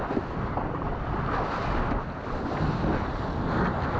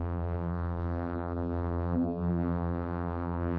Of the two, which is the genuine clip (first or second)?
first